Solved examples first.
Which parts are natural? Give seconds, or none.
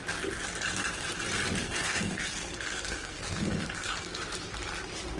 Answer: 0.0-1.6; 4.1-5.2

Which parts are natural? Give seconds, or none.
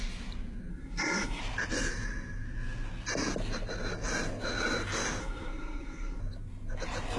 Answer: 0.0-0.7; 1.4-5.2; 6.2-7.2